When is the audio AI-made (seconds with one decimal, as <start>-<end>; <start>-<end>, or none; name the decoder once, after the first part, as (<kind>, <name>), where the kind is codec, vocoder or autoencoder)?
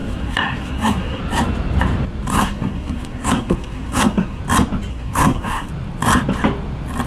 0.0-1.2 (codec, SNAC); 2.3-4.4; 4.9-5.7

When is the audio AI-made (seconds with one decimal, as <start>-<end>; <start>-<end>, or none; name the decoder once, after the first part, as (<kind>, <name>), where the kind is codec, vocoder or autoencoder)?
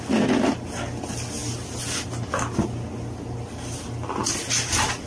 none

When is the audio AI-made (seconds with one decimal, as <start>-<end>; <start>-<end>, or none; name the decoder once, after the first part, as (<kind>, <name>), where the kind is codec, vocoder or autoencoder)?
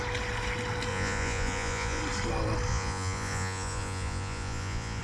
0.9-2.0 (vocoder, Vocos); 2.7-5.0